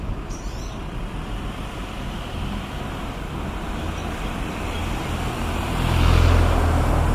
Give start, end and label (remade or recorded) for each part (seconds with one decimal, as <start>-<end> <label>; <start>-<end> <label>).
0.0-4.0 recorded; 4.0-4.6 remade; 4.6-7.1 recorded